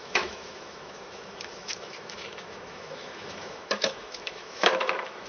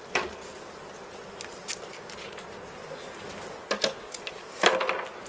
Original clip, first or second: second